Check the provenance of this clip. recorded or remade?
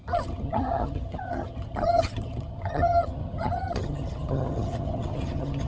remade